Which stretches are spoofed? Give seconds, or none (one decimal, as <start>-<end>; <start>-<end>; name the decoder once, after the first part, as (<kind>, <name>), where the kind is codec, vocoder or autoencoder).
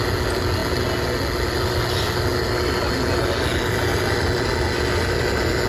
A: none